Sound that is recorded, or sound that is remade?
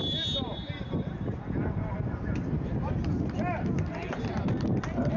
recorded